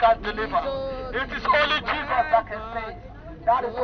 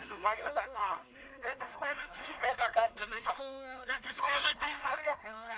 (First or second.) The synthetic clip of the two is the second